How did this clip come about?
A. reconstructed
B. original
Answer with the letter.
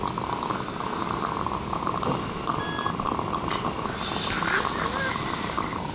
B